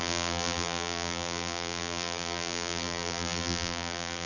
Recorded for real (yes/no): no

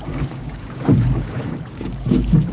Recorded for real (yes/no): no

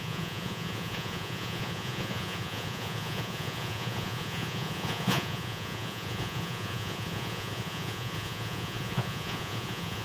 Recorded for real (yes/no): no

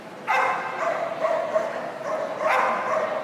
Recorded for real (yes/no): yes